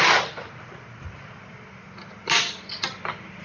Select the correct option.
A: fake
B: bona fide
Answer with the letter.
B